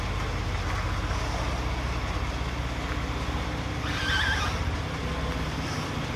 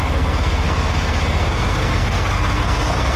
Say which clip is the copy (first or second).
second